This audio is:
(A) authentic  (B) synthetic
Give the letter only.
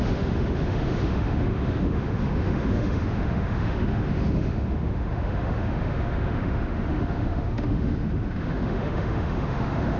B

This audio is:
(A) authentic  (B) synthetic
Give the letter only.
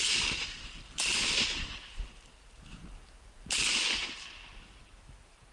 A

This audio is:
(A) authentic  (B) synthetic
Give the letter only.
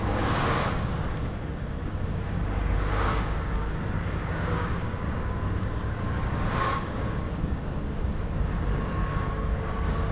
B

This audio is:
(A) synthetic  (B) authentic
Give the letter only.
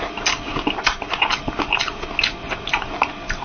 B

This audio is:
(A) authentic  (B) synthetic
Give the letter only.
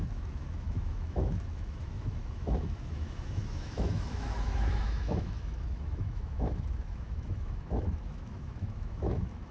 B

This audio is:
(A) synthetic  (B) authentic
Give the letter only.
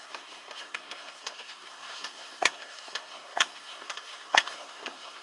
A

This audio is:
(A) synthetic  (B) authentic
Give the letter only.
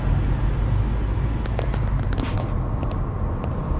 B